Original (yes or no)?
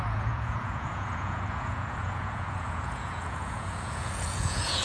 no